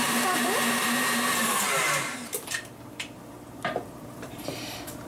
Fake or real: fake